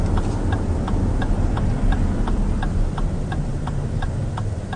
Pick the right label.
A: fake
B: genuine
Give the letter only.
B